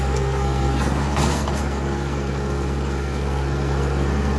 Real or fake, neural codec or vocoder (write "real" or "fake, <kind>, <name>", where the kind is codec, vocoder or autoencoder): fake, codec, SNAC